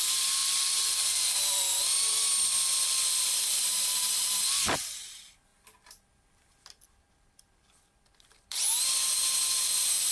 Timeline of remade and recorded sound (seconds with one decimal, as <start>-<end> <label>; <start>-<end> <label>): 0.0-10.1 remade